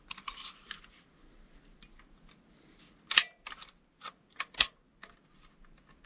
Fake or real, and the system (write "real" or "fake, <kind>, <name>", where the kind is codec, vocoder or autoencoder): real